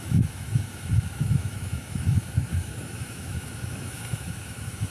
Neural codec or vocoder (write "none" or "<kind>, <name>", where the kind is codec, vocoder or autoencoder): autoencoder, DAC-VAE